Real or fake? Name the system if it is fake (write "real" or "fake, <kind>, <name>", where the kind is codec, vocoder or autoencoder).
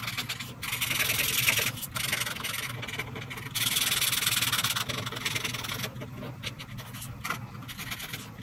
real